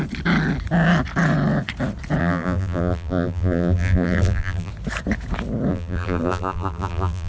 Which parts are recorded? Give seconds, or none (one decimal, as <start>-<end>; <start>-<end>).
0.0-2.2; 4.7-5.7